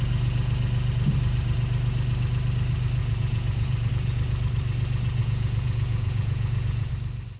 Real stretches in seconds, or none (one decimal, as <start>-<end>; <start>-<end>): 0.0-3.0; 3.9-5.2; 6.9-7.4